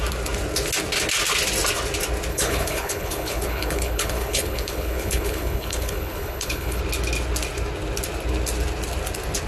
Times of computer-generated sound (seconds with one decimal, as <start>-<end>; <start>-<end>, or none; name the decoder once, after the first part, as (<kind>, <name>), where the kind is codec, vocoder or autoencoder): 2.3-6.8 (codec, HILCodec)